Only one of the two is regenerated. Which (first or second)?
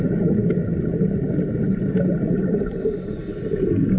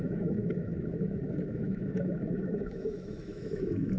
second